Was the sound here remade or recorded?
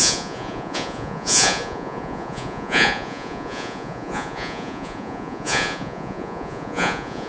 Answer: remade